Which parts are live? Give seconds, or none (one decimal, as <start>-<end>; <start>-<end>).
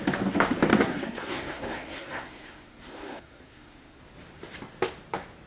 0.0-0.7; 4.0-5.5